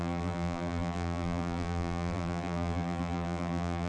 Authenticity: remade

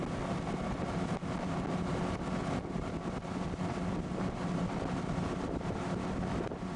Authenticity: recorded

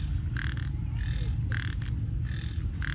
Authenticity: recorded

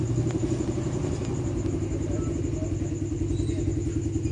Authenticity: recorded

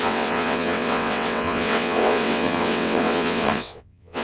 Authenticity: remade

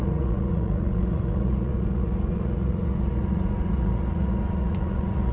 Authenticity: remade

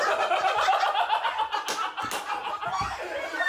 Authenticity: recorded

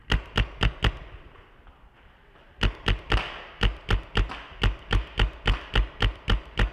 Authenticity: recorded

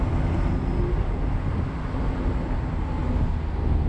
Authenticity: recorded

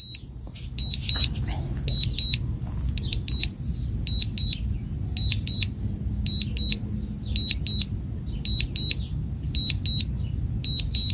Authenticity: recorded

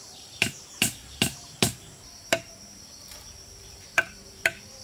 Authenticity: remade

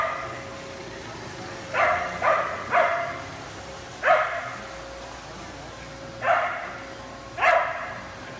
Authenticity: recorded